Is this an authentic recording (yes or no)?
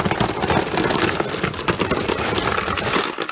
yes